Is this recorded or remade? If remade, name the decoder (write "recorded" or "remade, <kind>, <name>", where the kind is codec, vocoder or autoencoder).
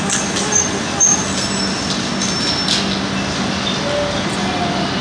recorded